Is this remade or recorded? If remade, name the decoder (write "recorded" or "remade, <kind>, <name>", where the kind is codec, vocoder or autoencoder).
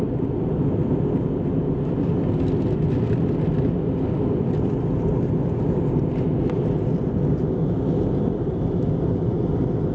recorded